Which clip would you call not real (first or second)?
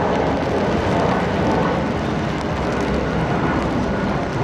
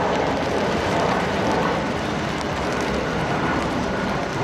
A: second